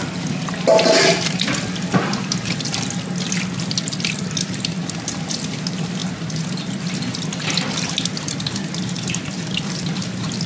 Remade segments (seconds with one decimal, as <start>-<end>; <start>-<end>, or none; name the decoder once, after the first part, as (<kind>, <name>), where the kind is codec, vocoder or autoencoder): none